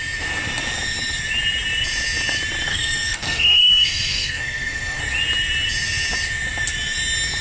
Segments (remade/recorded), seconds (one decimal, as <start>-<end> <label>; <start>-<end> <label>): 0.0-2.7 recorded; 2.7-5.0 remade; 5.0-7.4 recorded